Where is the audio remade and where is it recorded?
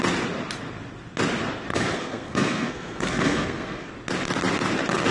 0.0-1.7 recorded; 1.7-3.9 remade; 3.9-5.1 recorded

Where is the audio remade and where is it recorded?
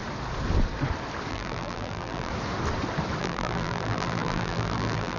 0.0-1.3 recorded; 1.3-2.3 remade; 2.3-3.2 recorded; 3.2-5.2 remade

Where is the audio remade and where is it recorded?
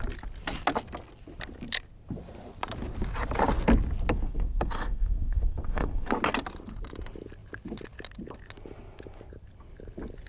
0.0-4.1 recorded; 4.1-6.1 remade; 6.1-10.3 recorded